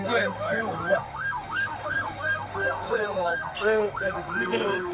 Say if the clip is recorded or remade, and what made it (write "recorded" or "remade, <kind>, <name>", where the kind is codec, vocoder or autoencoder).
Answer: remade, codec, SNAC